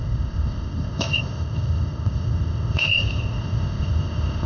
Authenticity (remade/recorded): remade